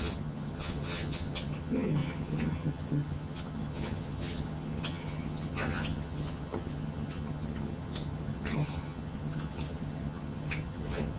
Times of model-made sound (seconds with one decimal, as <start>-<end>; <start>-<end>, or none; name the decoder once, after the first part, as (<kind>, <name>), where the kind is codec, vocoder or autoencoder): 0.0-11.2 (vocoder, HiFi-GAN)

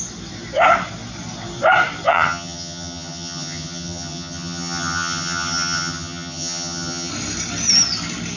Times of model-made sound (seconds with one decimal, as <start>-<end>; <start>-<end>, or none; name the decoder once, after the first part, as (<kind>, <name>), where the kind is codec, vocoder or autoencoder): 2.1-7.1 (vocoder, HiFi-GAN)

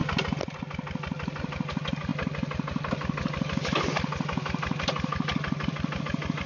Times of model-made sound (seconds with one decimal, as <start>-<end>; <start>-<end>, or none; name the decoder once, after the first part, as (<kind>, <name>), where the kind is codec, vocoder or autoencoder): none

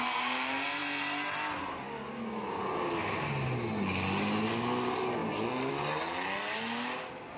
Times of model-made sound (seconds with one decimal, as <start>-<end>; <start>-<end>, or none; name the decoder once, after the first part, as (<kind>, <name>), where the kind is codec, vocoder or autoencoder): none